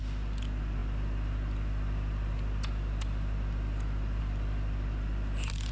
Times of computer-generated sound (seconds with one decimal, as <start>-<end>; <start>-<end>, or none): none

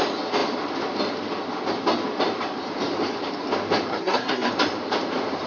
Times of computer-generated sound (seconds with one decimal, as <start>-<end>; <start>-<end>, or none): 3.9-4.5

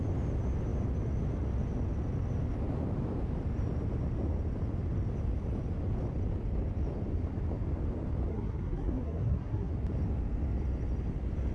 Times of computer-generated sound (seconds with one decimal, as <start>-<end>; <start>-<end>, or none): 8.3-9.7

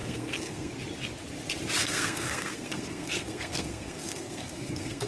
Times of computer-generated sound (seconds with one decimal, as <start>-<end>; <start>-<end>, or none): 0.0-0.7; 1.8-5.1

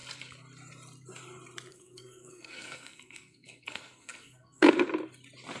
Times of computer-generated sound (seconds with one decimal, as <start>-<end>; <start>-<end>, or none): 1.7-4.7

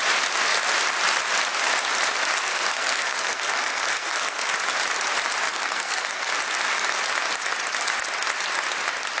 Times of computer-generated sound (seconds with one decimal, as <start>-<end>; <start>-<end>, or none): 2.5-4.5; 5.5-6.3